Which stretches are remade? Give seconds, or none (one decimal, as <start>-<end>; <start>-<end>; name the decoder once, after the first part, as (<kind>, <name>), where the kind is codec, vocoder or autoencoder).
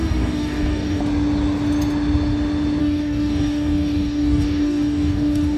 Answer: 0.0-1.0 (codec, DAC); 2.8-5.6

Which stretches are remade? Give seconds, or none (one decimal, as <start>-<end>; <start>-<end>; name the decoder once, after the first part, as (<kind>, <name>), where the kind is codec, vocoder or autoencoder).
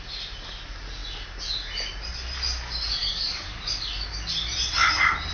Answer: 3.0-3.9 (codec, DAC)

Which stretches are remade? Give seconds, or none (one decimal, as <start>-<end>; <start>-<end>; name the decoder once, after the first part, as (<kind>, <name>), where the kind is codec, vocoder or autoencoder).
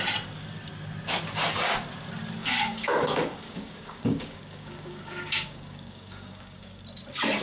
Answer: 2.4-6.8 (codec, DAC)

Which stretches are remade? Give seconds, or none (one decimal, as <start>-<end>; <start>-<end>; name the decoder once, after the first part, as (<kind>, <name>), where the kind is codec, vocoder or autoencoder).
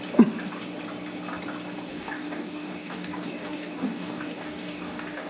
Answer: 1.9-5.3 (codec, DAC)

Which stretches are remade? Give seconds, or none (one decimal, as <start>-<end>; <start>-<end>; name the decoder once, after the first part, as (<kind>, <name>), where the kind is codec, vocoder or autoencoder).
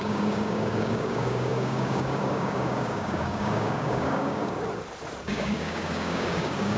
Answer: 0.0-4.6 (codec, DAC); 5.2-6.8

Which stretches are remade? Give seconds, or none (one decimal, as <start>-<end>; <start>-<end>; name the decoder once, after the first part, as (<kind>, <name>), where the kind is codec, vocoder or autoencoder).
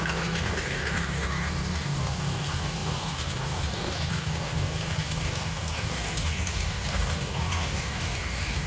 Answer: 0.0-8.7 (codec, DAC)